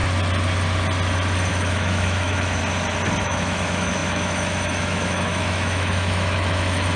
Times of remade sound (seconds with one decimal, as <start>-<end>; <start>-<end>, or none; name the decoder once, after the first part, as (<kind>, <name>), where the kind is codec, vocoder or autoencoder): 1.5-2.6 (autoencoder, DAC-VAE); 3.2-7.0